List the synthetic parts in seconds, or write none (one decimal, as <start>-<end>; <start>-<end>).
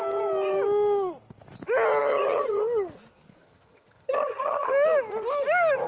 2.0-2.6; 3.4-4.7